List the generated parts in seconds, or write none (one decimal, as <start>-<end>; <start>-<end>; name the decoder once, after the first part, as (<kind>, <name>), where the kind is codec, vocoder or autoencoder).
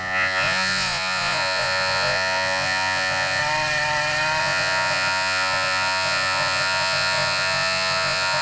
0.0-3.4 (vocoder, Vocos); 4.4-8.4